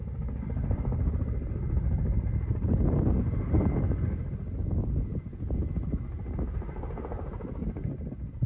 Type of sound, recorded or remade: recorded